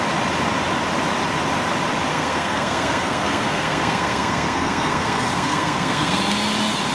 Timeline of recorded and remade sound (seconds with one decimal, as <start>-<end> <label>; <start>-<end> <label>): 0.0-2.1 recorded; 2.1-6.2 remade; 6.2-6.9 recorded